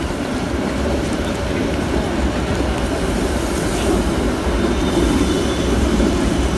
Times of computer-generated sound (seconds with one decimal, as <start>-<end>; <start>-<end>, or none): 0.0-2.5; 3.7-6.6